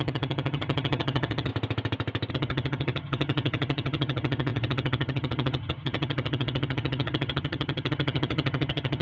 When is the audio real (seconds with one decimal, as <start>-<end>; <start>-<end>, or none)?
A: 1.5-2.3